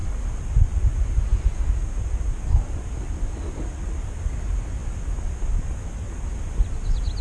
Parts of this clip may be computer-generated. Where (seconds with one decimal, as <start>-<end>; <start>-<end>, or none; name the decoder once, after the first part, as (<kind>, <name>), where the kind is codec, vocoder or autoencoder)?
none